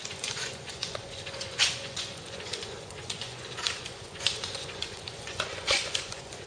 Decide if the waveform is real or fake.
fake